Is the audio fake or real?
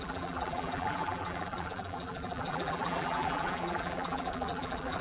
fake